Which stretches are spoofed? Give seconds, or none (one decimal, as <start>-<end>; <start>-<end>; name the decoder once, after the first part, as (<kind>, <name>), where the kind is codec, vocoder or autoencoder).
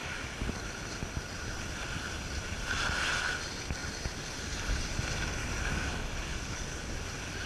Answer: 0.0-0.5 (codec, DAC); 5.4-6.9